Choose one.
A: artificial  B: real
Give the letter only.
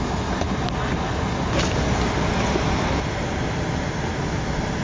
B